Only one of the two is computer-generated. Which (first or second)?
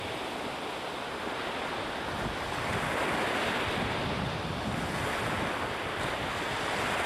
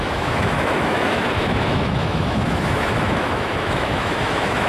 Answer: second